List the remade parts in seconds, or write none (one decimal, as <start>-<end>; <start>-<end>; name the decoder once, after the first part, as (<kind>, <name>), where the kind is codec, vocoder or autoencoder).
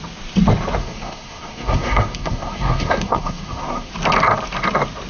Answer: 0.8-3.9 (codec, SNAC)